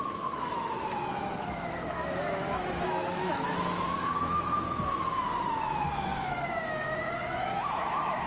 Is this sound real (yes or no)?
no